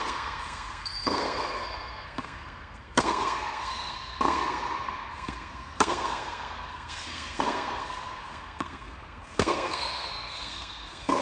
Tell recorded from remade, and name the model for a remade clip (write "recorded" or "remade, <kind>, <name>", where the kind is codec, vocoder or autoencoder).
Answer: remade, codec, SNAC